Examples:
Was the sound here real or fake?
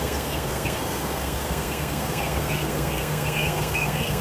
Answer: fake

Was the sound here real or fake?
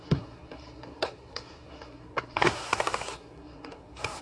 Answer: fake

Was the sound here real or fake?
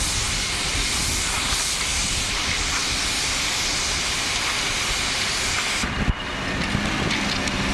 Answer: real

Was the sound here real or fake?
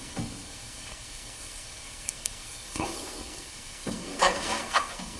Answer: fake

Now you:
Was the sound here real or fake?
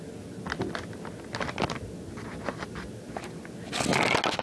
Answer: real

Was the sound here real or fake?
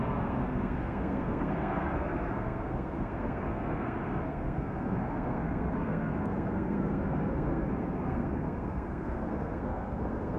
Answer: fake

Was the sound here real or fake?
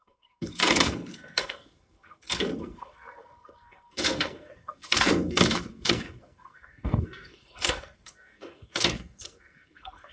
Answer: fake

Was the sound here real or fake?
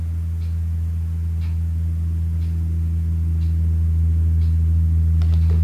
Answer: real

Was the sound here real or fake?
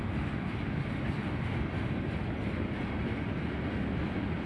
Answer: real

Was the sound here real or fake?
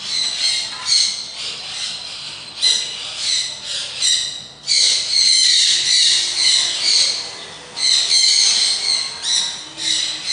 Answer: real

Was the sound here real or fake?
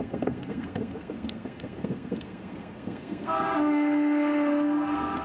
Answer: fake